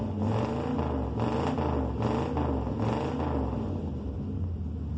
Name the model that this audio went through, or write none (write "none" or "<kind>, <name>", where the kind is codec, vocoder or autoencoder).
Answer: none